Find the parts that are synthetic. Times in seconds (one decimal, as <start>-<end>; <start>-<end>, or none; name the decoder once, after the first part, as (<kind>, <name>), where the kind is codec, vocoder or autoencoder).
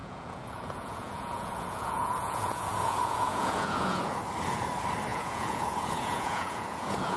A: 0.0-4.2 (vocoder, Vocos); 5.1-7.2